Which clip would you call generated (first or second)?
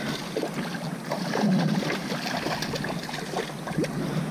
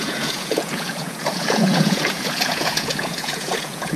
second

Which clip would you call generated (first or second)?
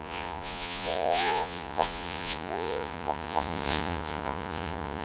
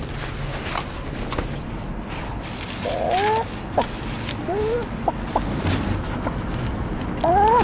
first